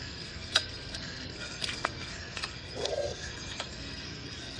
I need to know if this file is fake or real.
fake